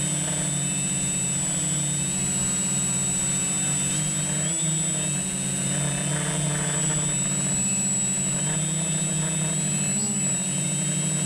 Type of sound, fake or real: real